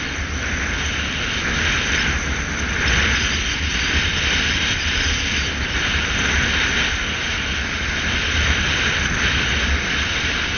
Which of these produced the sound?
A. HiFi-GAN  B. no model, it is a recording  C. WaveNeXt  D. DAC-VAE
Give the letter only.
B